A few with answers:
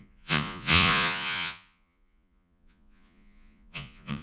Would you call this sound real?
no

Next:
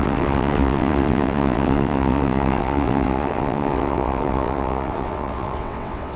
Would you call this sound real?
no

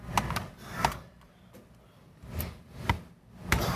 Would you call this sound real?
yes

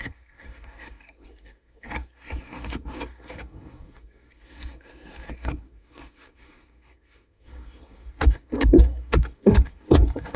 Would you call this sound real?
no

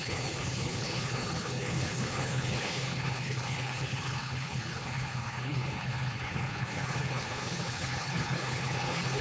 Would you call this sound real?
no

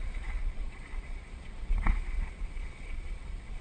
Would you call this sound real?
no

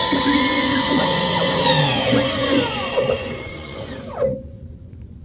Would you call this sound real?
no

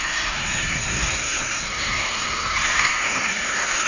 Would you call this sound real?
no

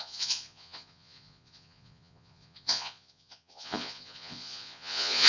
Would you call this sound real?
no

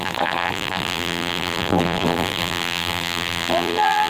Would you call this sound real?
no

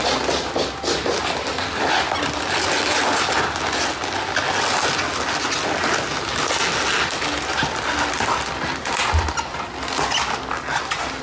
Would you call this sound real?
yes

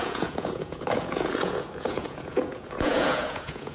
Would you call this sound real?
no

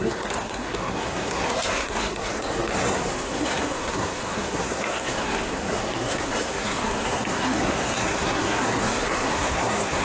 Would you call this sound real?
no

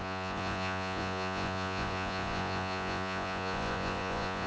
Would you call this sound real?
no